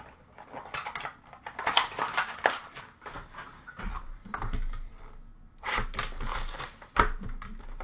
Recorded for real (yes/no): yes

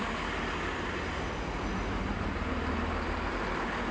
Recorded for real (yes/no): yes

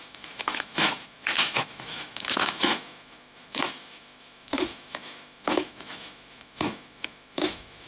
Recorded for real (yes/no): no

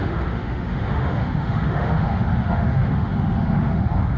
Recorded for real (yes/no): no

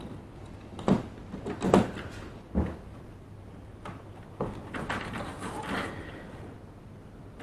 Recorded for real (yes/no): yes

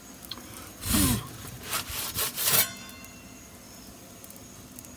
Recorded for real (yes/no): yes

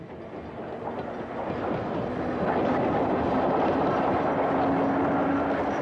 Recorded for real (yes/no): yes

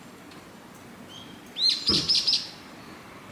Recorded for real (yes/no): yes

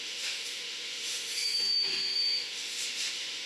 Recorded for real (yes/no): no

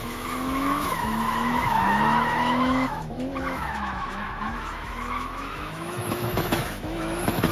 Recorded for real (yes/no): no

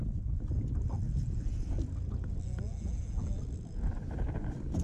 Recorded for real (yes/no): yes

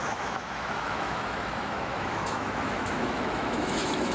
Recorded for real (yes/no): no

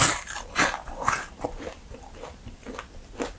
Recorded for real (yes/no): yes